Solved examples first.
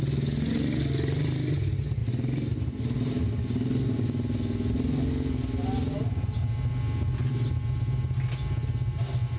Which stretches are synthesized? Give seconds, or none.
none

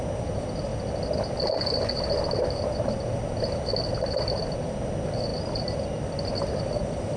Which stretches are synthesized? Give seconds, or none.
none

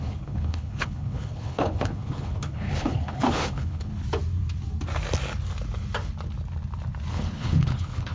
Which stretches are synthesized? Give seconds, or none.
0.0-3.9 (codec, HILCodec); 7.1-8.1

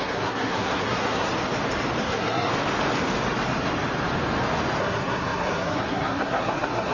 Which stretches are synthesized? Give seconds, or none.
0.0-1.3 (codec, SNAC); 2.0-2.5; 4.8-6.9

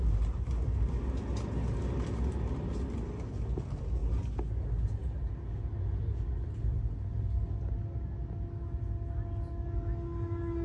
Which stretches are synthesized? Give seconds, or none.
none

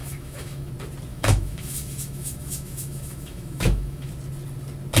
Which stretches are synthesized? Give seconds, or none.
0.0-0.7 (autoencoder, DAC-VAE); 1.1-4.1